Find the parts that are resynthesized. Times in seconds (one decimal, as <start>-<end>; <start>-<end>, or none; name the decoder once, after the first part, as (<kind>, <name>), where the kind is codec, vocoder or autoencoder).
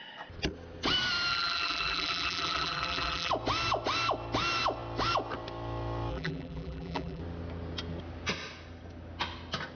1.3-3.3 (vocoder, BigVGAN v2); 6.1-7.2